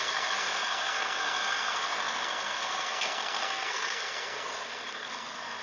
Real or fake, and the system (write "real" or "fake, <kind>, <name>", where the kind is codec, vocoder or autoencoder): fake, codec, SNAC